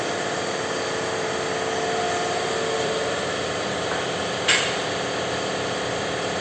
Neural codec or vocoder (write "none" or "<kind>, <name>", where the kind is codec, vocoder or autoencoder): vocoder, BigVGAN v2